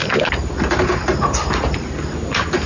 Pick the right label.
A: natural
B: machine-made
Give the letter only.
A